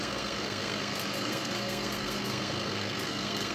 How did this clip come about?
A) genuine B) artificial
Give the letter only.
B